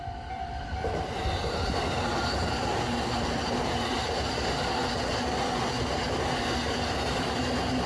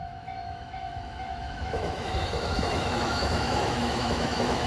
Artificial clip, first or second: second